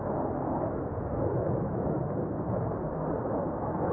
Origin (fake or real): real